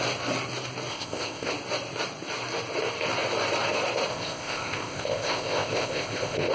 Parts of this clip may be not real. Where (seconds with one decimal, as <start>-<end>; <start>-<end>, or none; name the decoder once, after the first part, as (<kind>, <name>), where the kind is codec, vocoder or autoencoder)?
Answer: 0.9-1.5 (codec, ZipCodec); 4.1-6.5